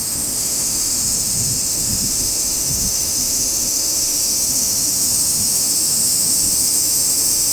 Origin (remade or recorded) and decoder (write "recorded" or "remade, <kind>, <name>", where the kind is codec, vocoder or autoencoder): remade, autoencoder, DAC-VAE